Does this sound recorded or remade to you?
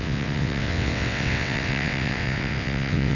remade